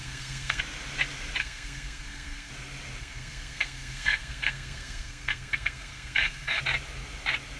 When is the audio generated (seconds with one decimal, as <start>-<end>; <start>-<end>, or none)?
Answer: 0.0-0.6; 1.4-2.5; 3.0-6.6